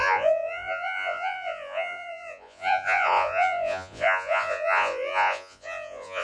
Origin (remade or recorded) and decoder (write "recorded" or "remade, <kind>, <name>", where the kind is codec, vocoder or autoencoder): remade, vocoder, Vocos